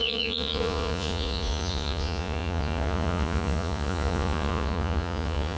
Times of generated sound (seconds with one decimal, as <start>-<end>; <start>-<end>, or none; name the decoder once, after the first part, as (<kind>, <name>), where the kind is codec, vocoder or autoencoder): 0.0-5.6 (vocoder, Vocos)